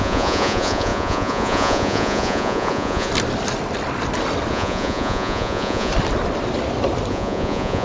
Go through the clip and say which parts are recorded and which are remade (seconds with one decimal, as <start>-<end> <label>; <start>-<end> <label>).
0.0-3.1 remade; 3.1-4.5 recorded; 4.5-5.9 remade; 5.9-7.1 recorded; 7.1-7.8 remade